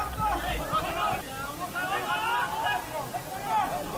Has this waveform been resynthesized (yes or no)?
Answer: no